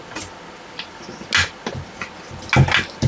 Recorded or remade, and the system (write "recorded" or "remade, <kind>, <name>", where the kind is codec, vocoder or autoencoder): recorded